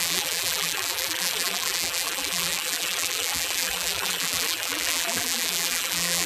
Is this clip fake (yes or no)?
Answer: yes